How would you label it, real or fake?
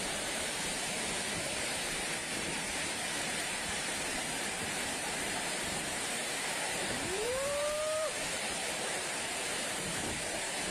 fake